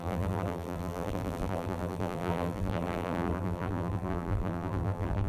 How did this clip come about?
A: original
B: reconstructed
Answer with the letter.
B